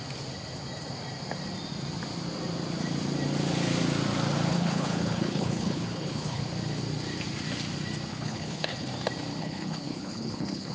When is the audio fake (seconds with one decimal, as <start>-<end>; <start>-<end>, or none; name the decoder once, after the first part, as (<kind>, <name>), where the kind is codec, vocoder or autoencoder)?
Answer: 4.5-6.4 (codec, HILCodec); 8.1-8.9; 9.4-10.7